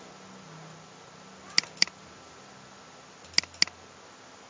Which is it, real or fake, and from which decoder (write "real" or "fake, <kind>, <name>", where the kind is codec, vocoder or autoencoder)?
real